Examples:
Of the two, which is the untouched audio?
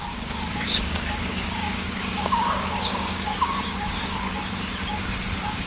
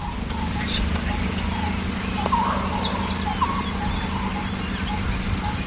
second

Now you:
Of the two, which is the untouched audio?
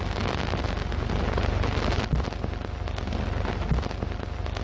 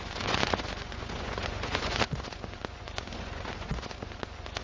first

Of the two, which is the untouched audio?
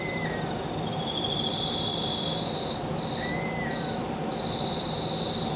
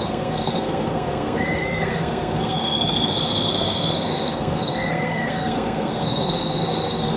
first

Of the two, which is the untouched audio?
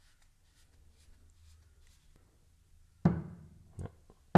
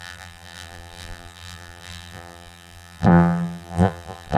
first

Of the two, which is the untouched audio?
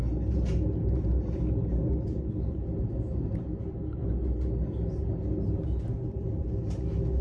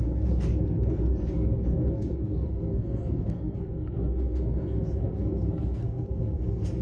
first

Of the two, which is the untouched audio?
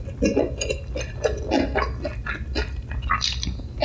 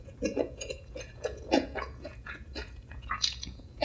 first